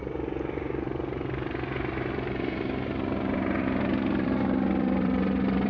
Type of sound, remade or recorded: remade